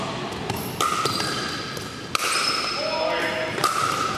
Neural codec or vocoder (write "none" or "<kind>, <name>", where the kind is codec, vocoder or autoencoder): none